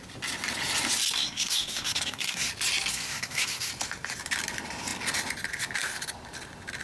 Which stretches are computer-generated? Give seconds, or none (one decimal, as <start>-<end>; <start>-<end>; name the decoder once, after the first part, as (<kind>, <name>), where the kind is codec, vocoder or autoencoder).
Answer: 1.2-2.5 (codec, SNAC); 2.9-3.7